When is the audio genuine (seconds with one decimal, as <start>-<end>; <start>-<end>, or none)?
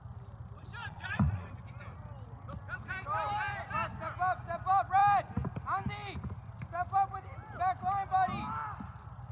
0.0-0.8; 1.5-9.3